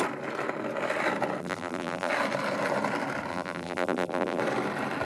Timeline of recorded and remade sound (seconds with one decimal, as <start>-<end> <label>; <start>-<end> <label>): 0.0-1.4 recorded; 1.4-2.1 remade; 2.1-3.3 recorded; 3.3-4.4 remade; 4.4-5.0 recorded